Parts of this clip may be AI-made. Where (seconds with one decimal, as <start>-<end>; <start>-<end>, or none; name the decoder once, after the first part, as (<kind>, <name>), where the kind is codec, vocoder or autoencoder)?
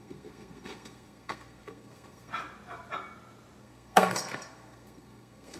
0.0-2.3 (codec, SNAC); 3.6-5.6